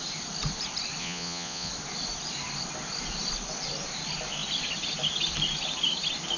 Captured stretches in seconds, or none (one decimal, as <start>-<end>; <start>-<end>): 0.0-1.0; 1.7-6.4